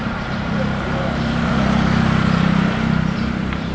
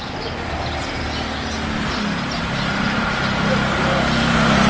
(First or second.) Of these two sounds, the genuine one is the second